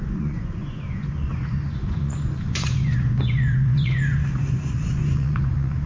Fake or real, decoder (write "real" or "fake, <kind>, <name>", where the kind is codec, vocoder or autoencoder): fake, vocoder, Vocos